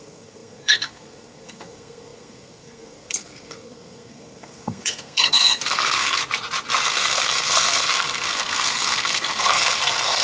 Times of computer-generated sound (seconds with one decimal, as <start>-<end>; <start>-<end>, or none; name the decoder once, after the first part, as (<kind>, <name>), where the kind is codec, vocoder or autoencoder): 0.0-6.2 (codec, SNAC); 6.8-10.2

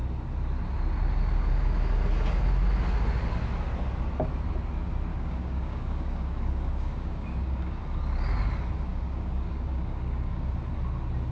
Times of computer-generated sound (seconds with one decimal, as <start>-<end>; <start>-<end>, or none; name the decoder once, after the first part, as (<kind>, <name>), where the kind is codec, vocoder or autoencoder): 5.1-7.8 (codec, DAC); 8.9-10.5

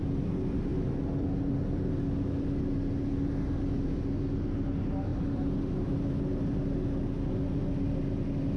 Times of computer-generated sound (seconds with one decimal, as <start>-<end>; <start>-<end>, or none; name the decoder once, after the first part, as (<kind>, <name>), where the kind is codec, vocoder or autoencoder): none

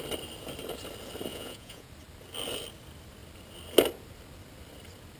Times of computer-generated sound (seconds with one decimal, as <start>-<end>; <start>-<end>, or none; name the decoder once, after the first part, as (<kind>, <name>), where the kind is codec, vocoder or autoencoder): 1.3-1.9 (vocoder, Vocos)